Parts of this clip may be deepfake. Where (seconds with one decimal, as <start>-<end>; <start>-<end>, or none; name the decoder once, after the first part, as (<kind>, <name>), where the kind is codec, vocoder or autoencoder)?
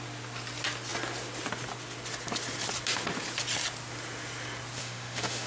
4.8-5.5 (autoencoder, DAC-VAE)